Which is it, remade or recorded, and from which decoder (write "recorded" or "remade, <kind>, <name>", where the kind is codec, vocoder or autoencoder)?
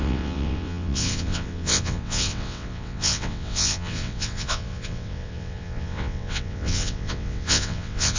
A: remade, vocoder, WaveNeXt